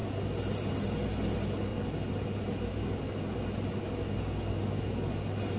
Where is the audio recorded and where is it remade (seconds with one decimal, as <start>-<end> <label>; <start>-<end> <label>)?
0.0-5.6 recorded